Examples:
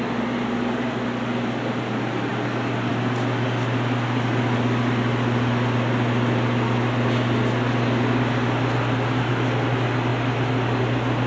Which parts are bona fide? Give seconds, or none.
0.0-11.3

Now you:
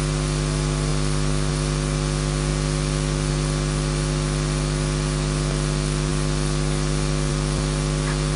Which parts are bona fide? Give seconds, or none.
0.0-8.4

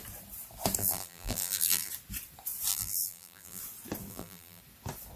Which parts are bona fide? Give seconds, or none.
0.0-0.8; 1.9-2.7; 3.6-4.1; 4.6-5.2

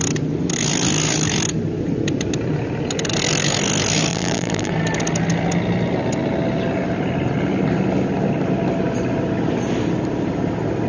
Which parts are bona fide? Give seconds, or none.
0.0-4.1; 4.7-10.9

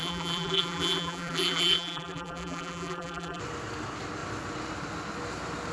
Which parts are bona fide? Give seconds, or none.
3.4-5.7